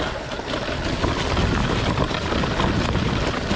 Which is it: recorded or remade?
recorded